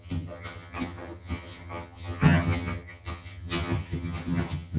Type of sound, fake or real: fake